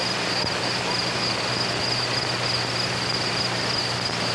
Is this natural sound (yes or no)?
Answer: yes